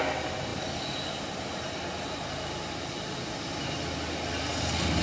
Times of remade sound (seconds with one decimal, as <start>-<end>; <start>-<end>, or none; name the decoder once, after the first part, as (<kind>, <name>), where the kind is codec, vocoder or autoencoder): none